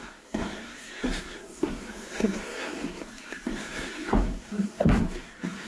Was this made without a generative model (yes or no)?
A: no